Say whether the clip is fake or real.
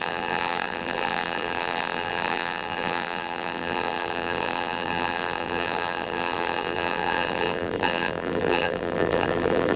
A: fake